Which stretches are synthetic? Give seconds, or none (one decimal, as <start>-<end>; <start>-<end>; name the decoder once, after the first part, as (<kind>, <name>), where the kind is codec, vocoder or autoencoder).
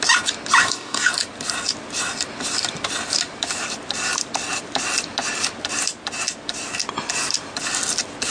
0.6-1.1 (codec, DAC)